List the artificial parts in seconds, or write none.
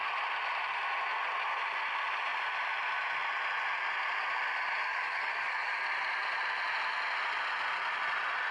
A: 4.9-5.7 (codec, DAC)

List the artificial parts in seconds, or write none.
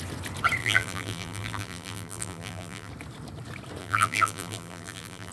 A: 0.6-2.9 (vocoder, BigVGAN v2); 3.8-5.3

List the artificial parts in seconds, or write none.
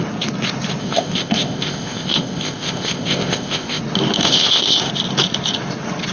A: 0.8-3.8 (codec, ZipCodec); 4.2-4.9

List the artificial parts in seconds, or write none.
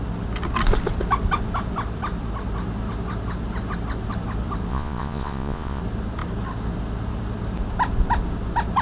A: 4.7-5.8 (vocoder, Vocos)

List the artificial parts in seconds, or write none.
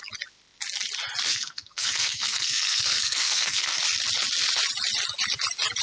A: 1.3-3.8 (codec, SNAC)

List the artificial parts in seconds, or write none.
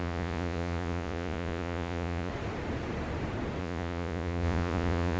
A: 0.0-2.3 (vocoder, Vocos); 3.6-5.2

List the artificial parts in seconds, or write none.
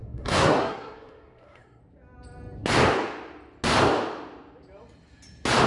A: 0.0-1.8 (codec, SNAC)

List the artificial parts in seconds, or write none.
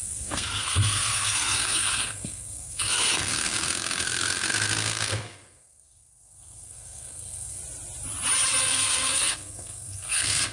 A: 0.0-7.6 (codec, SNAC); 8.6-10.5